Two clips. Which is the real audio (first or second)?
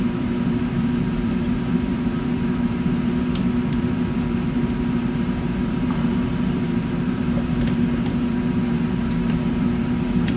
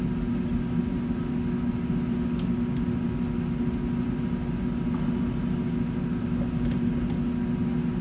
second